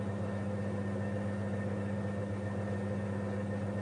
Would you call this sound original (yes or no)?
yes